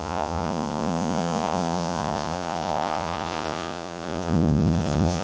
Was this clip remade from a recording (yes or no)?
yes